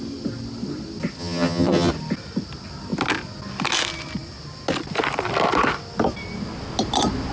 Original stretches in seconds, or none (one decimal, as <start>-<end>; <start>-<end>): 0.0-1.2; 1.9-7.3